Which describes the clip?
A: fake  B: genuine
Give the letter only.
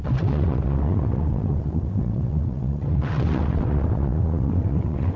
A